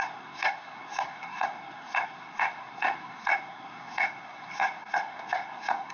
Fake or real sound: fake